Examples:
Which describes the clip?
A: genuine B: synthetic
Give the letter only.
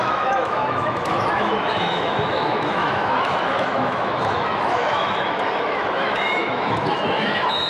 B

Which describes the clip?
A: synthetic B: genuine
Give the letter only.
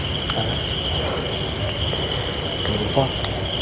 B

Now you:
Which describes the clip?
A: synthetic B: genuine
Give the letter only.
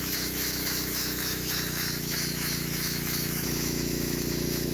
A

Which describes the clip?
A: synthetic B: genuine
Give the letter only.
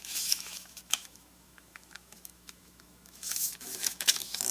A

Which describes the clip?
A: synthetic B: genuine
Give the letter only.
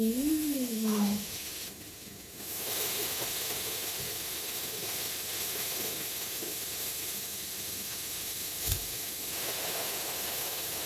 A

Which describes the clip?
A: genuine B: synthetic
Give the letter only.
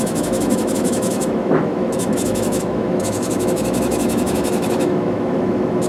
B